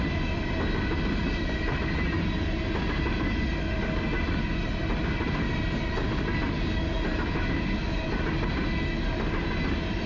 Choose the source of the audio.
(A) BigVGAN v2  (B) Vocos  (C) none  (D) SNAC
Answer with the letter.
C